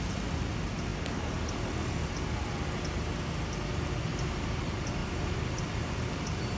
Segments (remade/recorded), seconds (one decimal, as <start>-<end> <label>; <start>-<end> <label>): 0.0-5.0 recorded; 5.0-6.6 remade